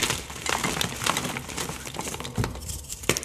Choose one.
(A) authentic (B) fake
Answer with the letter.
B